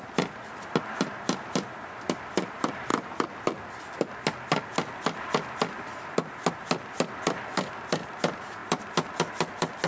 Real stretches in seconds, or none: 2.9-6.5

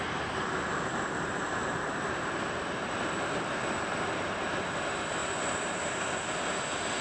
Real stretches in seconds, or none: 5.2-7.0

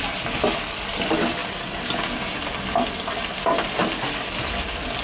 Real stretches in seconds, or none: 0.0-5.0